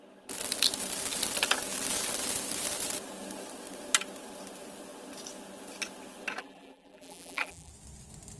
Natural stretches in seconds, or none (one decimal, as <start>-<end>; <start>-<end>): 0.0-6.4; 7.7-8.4